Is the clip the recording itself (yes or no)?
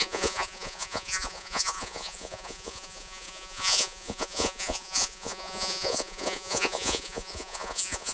no